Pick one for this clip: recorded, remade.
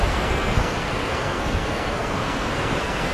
remade